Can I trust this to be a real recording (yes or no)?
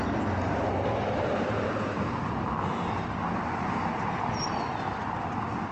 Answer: yes